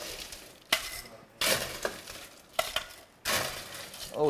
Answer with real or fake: real